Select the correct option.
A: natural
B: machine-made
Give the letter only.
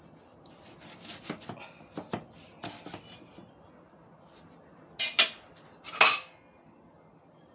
A